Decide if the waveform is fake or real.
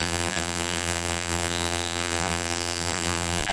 fake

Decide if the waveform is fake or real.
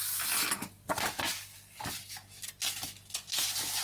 real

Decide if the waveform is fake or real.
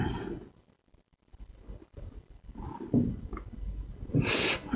real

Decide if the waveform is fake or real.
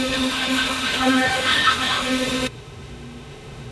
fake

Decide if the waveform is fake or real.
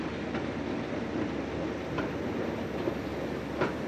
real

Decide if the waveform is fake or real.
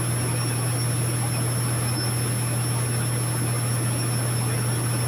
real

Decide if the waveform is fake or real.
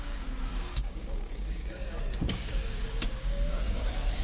fake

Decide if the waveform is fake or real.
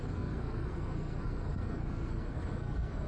fake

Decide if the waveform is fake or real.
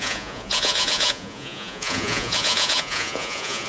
fake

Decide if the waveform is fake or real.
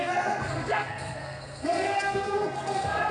fake